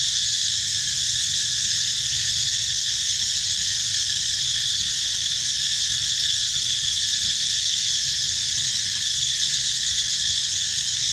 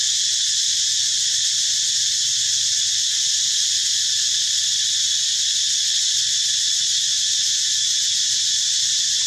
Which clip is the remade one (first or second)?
first